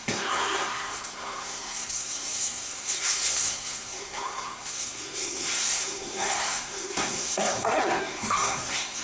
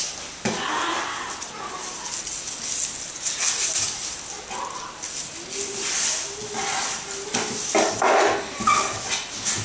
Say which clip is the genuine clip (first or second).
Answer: second